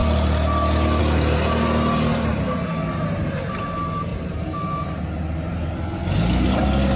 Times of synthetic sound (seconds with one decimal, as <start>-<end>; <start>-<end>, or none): none